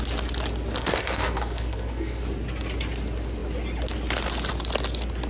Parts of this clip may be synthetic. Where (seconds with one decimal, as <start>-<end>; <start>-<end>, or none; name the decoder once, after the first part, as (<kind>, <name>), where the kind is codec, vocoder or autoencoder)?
0.8-2.2 (codec, SNAC)